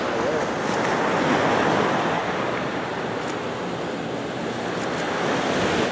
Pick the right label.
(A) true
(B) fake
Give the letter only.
A